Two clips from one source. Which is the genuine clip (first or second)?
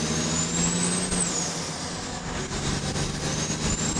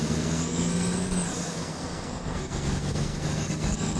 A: first